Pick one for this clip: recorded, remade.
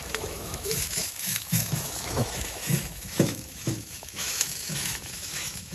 remade